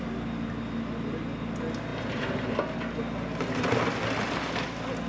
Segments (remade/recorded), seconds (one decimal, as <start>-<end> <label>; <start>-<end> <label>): 0.0-5.1 recorded